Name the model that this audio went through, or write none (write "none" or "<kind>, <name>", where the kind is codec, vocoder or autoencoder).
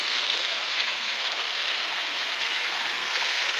codec, SNAC